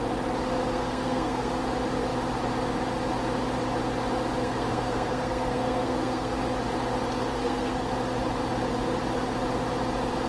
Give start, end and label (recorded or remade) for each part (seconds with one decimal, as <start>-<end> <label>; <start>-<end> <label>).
0.0-0.7 recorded; 0.7-1.5 remade; 1.5-4.4 recorded; 4.4-6.4 remade; 6.4-7.3 recorded; 7.3-7.9 remade; 7.9-10.3 recorded